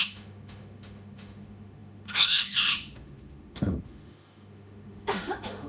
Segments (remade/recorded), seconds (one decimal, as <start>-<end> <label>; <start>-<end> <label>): 0.0-5.7 remade